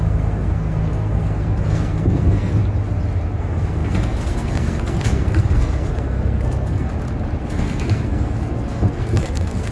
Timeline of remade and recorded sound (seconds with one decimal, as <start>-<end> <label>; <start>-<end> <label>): 0.0-2.6 remade; 2.6-3.4 recorded; 3.4-6.9 remade; 6.9-7.4 recorded; 7.4-9.7 remade